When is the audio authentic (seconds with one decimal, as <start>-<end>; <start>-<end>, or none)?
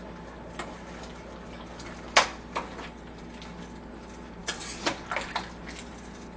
0.0-6.4